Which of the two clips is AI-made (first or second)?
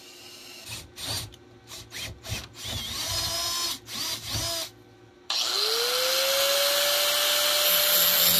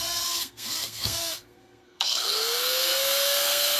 second